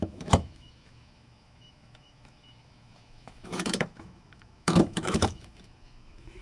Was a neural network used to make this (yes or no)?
yes